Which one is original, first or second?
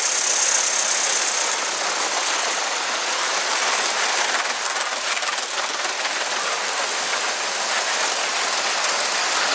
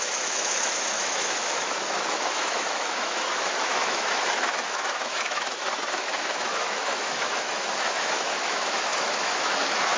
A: first